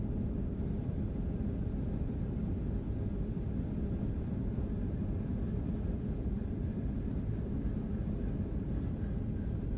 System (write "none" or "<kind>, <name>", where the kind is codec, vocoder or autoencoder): none